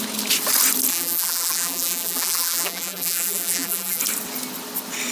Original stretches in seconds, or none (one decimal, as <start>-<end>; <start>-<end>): 0.0-0.9; 4.0-5.1

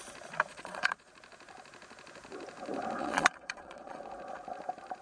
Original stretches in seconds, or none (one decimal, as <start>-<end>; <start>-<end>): 0.0-0.5; 1.1-3.0; 4.0-5.0

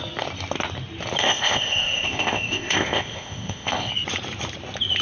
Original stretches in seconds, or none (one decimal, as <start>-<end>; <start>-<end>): 0.0-1.2; 3.9-5.0

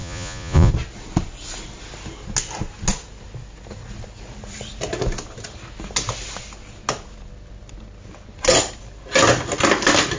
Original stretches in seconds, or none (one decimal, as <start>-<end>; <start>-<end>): 0.7-10.2

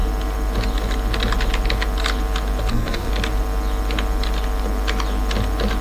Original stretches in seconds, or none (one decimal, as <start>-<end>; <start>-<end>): 0.0-2.7; 3.1-5.8

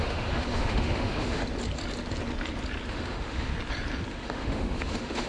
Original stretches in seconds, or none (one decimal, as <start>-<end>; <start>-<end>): 1.4-2.9; 3.5-4.1